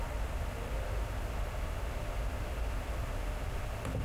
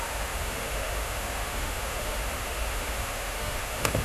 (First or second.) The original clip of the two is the first